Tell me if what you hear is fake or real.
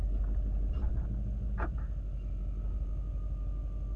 real